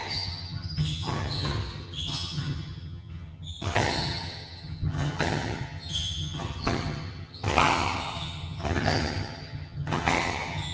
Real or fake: fake